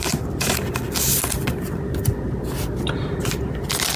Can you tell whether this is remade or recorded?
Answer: recorded